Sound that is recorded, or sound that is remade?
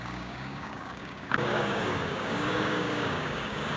remade